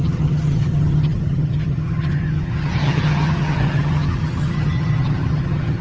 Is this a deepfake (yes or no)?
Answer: yes